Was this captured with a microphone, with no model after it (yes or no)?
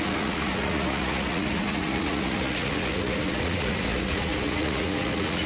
no